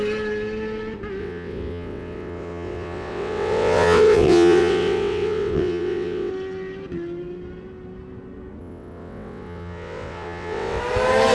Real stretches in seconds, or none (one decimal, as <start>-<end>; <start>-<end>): 0.0-1.2; 6.3-8.6; 10.8-11.3